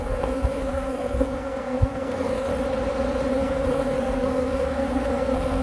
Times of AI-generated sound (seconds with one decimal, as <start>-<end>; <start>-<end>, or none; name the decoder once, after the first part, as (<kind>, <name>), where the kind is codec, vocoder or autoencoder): 0.0-2.5 (codec, SNAC); 3.3-5.6